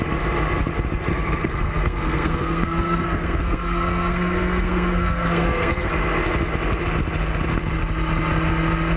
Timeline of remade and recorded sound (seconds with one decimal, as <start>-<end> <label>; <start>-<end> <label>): 0.0-1.1 recorded; 1.1-5.9 remade; 5.9-9.0 recorded